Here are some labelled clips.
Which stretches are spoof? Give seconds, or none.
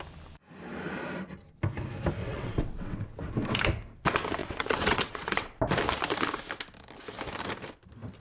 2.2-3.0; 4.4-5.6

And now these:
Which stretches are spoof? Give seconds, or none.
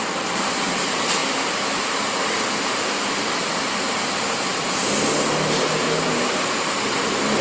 0.0-1.2; 3.1-3.5; 6.1-7.4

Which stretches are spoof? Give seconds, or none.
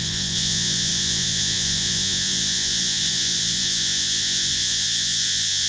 0.0-5.7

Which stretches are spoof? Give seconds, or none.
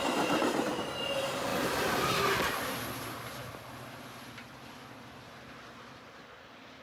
none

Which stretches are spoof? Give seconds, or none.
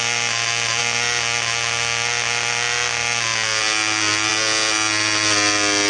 none